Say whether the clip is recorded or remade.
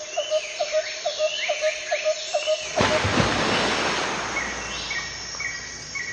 recorded